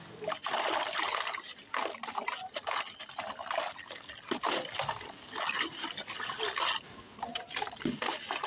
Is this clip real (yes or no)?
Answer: yes